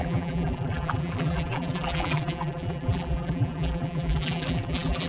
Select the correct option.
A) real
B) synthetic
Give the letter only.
B